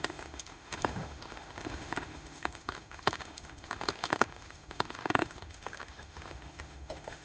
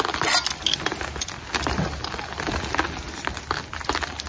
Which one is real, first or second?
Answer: second